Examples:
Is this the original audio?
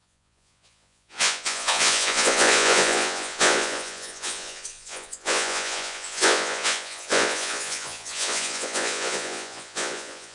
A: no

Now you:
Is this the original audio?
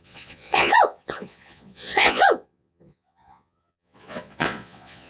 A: no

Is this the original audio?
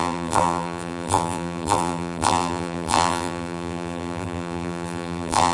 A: no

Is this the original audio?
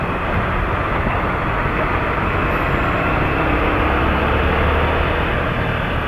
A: yes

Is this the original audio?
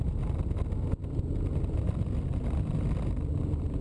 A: yes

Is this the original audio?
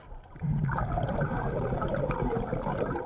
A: no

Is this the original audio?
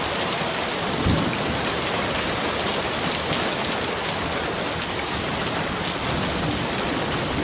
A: yes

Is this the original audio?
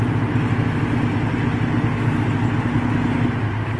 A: yes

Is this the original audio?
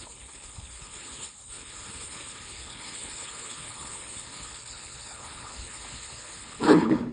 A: no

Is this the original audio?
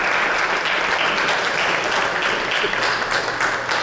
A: yes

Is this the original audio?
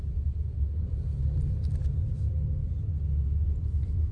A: yes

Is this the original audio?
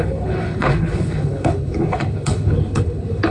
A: no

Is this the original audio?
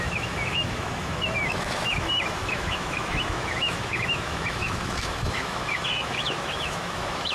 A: no